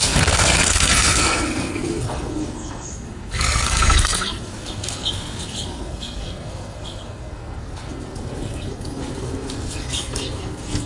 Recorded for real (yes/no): no